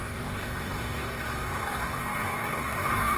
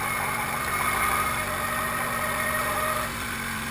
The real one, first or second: second